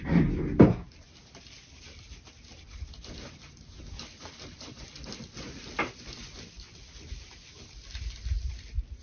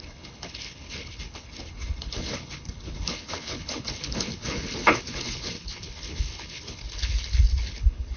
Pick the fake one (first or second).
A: second